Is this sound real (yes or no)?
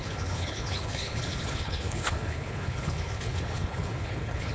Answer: no